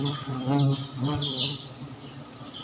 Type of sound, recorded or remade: recorded